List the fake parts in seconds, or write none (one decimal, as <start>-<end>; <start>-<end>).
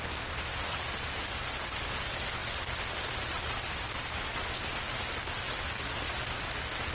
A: none